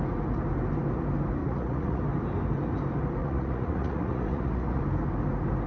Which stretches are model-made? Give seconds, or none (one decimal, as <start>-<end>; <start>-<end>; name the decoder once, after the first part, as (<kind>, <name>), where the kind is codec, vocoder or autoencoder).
1.4-2.0 (vocoder, Vocos); 3.2-4.8